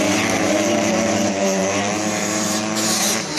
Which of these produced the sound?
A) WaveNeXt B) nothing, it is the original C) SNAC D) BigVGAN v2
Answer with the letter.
D